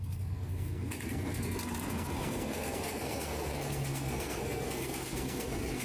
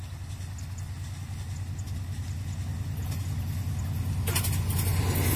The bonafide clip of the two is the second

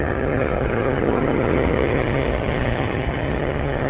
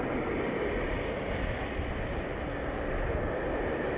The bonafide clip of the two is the second